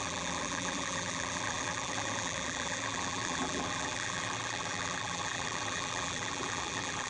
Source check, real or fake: fake